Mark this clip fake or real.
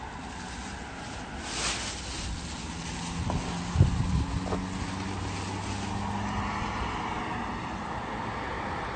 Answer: real